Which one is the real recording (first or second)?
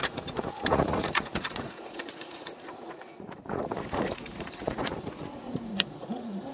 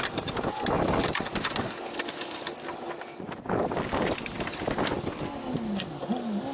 second